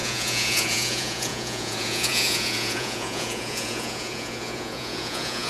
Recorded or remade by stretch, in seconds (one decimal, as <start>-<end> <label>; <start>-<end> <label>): 0.0-5.5 remade